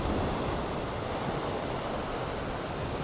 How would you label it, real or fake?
real